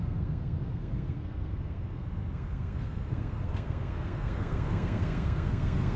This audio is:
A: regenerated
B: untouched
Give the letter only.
A